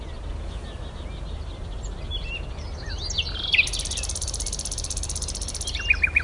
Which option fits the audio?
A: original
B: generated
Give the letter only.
A